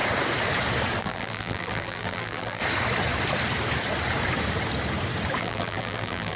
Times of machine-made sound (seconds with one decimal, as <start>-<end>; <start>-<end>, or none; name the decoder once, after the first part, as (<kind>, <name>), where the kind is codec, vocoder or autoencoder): 1.0-2.6 (vocoder, BigVGAN v2); 5.4-6.4